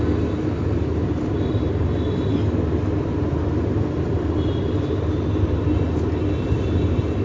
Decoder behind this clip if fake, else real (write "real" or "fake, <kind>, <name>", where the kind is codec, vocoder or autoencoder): real